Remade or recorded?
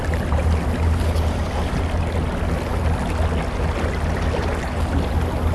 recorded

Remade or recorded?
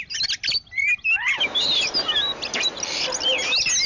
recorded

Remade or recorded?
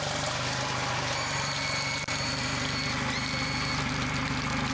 recorded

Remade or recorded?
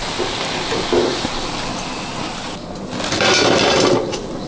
recorded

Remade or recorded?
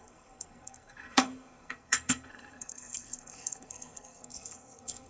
remade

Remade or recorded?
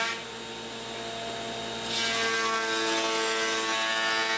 recorded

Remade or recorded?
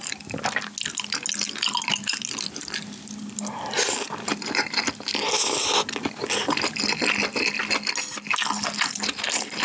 recorded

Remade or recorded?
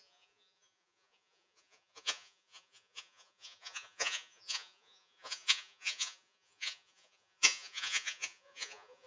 remade